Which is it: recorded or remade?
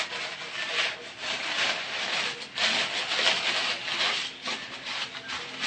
recorded